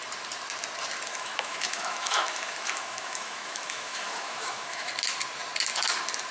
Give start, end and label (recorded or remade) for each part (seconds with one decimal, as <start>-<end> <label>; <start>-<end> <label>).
0.0-1.1 recorded; 1.1-4.9 remade; 4.9-6.3 recorded